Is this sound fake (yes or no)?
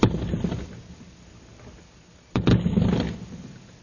no